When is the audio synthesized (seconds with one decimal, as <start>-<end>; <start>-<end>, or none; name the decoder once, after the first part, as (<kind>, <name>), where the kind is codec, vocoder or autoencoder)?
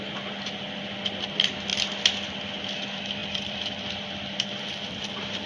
3.2-5.1 (vocoder, BigVGAN v2)